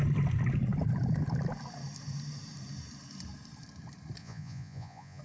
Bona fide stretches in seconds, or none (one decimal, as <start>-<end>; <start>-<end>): 0.0-4.2